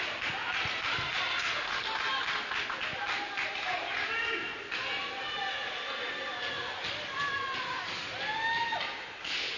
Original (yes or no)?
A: yes